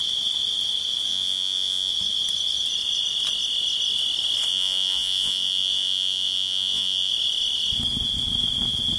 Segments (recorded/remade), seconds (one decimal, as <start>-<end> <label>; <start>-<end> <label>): 0.0-1.1 recorded; 1.1-1.9 remade; 1.9-4.5 recorded; 4.5-7.1 remade; 7.1-9.0 recorded